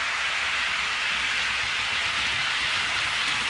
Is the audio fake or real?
real